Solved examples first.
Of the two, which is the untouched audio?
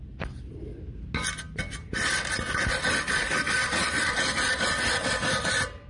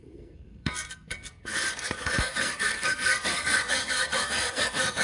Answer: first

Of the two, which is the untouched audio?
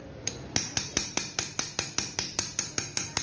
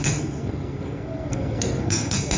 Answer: first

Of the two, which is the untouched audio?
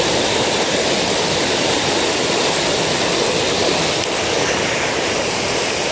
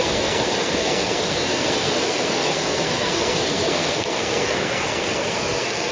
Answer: first